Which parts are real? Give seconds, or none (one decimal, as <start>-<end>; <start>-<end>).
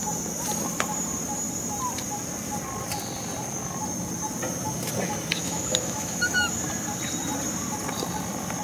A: 0.0-5.4; 6.5-8.6